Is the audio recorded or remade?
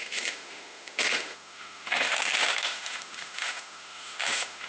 remade